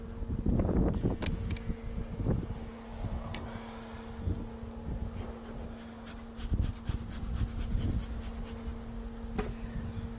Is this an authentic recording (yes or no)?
yes